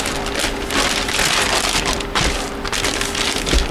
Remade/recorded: recorded